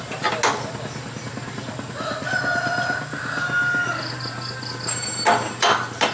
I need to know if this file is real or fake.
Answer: real